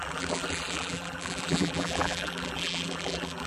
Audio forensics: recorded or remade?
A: remade